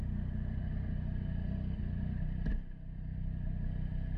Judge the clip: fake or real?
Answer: real